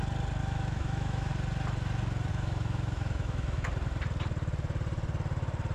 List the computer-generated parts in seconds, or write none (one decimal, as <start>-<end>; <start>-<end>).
0.4-1.3; 2.3-3.7